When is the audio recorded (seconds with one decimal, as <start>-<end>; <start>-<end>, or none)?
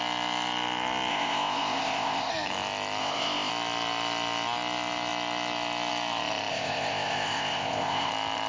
0.0-1.1; 2.3-3.0; 3.5-6.5; 8.1-8.5